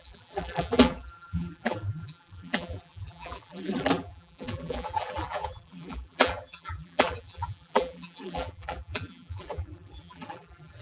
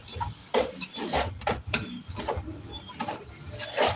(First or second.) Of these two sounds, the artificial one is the first